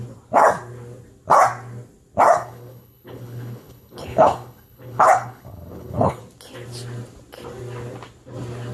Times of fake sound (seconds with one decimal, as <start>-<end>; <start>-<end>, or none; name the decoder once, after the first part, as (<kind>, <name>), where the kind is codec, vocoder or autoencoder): 2.3-6.2 (codec, HILCodec)